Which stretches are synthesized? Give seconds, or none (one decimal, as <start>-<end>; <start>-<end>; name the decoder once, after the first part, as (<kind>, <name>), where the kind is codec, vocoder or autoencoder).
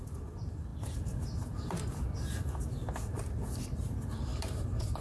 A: 4.3-5.0 (vocoder, BigVGAN v2)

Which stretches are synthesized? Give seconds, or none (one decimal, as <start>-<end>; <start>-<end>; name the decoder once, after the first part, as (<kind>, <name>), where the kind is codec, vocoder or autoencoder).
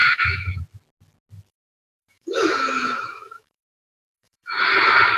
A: 0.0-0.6 (autoencoder, DAC-VAE); 1.5-4.6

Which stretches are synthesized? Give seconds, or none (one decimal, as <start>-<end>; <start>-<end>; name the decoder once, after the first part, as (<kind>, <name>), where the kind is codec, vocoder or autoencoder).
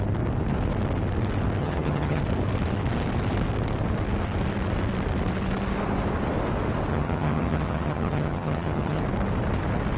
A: 1.6-2.2 (vocoder, HiFi-GAN); 6.9-9.0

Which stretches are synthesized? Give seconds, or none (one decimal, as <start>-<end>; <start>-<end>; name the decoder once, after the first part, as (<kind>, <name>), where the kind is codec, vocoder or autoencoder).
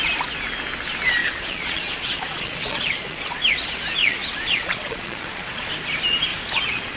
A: 1.2-3.4 (vocoder, Vocos); 4.0-5.7; 6.3-7.0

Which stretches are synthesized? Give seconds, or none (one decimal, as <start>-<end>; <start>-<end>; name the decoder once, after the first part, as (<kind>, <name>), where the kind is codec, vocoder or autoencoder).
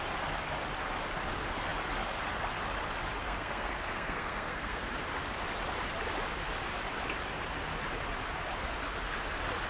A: 3.2-4.8 (codec, SNAC)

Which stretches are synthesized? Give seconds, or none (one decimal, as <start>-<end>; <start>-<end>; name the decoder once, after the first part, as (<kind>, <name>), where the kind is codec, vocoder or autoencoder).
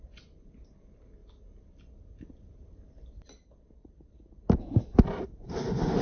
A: none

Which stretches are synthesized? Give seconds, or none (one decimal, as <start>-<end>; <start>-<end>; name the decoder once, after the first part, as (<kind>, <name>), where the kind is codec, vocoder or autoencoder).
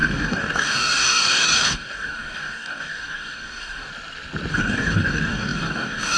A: 0.0-3.9 (codec, DAC); 4.5-6.2